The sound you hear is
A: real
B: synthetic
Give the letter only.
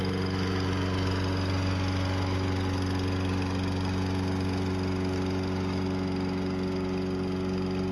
A